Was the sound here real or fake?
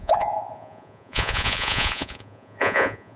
fake